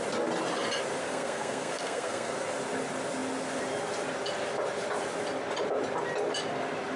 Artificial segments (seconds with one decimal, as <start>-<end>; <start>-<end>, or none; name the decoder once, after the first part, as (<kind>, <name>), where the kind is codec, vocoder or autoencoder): 1.0-2.3 (codec, SNAC)